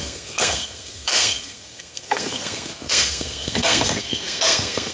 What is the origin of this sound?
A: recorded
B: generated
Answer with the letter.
B